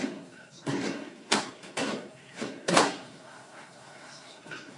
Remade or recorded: remade